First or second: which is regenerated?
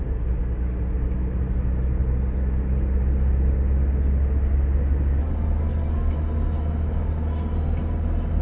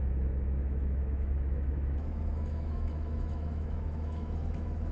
second